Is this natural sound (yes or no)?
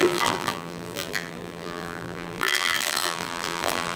no